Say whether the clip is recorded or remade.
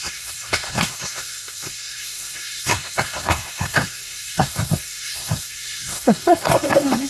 remade